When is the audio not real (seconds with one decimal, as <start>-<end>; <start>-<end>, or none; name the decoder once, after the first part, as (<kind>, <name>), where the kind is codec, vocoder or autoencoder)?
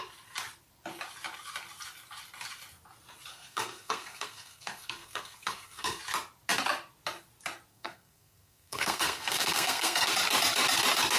3.3-6.0 (codec, SNAC); 7.7-10.1